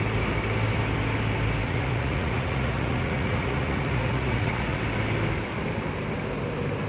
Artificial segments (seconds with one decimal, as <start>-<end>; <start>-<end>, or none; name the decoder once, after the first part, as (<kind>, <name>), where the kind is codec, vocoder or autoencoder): 1.6-4.8 (vocoder, Vocos)